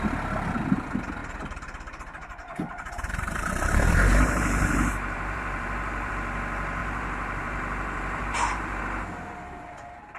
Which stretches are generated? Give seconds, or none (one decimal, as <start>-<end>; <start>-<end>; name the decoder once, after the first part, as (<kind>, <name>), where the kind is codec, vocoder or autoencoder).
1.2-6.1 (vocoder, BigVGAN v2); 6.8-8.8